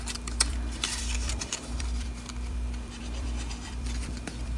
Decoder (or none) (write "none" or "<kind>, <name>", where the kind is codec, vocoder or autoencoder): vocoder, BigVGAN v2